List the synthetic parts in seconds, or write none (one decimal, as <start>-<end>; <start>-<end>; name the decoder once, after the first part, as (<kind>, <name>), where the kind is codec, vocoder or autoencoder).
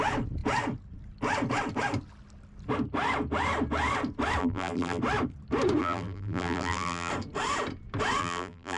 4.4-5.0 (vocoder, BigVGAN v2); 5.8-7.1; 8.2-8.8